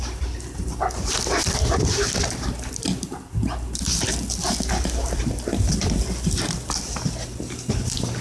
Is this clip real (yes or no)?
yes